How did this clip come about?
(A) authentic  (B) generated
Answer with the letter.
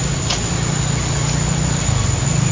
A